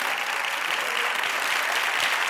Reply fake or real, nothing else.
real